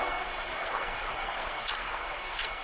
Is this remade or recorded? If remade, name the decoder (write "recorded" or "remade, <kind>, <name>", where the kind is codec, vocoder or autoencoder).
remade, codec, SNAC